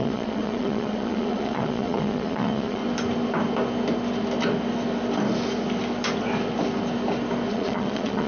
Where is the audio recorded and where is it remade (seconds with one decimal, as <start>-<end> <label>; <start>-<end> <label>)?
0.0-2.8 remade; 2.8-7.5 recorded; 7.5-8.3 remade